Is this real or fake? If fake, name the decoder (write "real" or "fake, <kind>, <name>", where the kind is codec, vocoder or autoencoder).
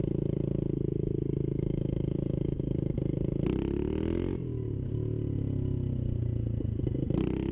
real